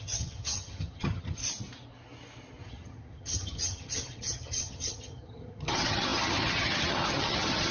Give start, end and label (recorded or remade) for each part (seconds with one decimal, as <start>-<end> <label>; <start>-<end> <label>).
0.0-1.4 remade; 1.4-2.7 recorded; 2.7-7.7 remade